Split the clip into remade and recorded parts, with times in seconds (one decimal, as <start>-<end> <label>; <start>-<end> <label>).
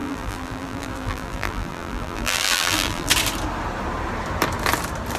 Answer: 0.0-3.1 remade; 3.1-5.2 recorded